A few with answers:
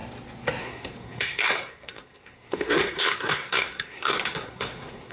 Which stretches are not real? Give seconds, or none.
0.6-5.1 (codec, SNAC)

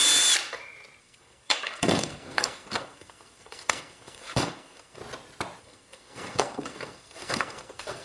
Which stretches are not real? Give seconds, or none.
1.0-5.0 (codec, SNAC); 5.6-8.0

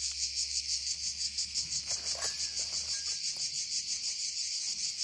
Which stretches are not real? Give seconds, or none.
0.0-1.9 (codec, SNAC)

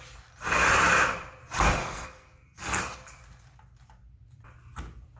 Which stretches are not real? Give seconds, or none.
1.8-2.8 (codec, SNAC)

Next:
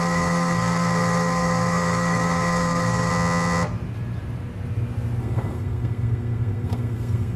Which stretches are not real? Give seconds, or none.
0.0-3.1 (codec, SNAC); 5.2-7.4

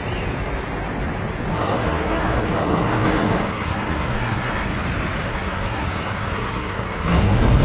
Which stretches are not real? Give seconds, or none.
1.5-4.7 (codec, SNAC); 5.3-7.6

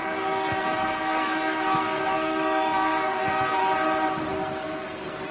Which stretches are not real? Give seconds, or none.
0.0-3.6 (codec, SNAC); 4.3-5.3